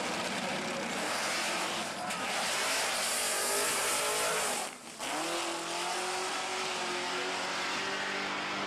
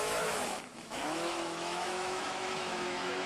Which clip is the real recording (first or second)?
first